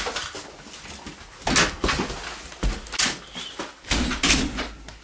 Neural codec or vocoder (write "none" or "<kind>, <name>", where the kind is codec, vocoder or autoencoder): none